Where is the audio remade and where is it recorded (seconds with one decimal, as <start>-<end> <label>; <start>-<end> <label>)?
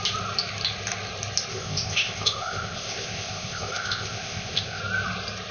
0.0-1.5 recorded; 1.5-4.8 remade; 4.8-5.5 recorded